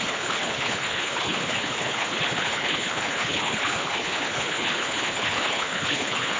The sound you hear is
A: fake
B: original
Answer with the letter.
A